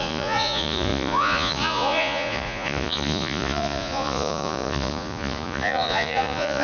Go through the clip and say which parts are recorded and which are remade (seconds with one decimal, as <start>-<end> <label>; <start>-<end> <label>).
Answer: 0.0-6.6 remade